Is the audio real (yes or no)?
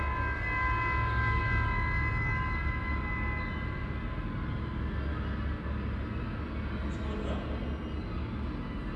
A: yes